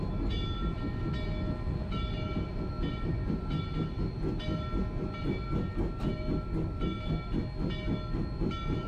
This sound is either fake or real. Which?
real